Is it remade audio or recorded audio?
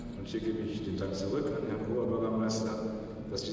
recorded